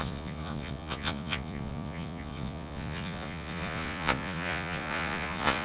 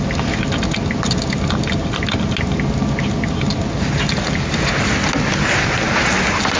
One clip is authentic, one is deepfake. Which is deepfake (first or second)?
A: first